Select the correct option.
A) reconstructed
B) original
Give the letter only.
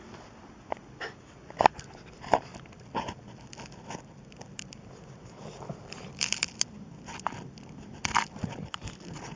B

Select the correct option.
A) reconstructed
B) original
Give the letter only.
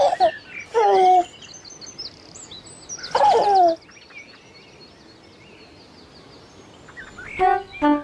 B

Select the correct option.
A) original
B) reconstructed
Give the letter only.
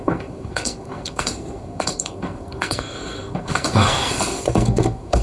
B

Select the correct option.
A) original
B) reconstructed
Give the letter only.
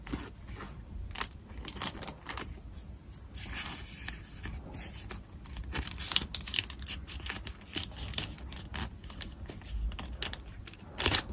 A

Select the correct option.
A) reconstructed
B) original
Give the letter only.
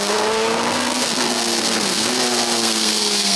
A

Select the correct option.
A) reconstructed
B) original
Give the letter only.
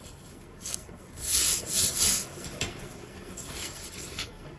A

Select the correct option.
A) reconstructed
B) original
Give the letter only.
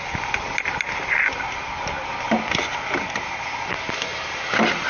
B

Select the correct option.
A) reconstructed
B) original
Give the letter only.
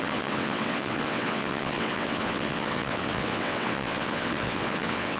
A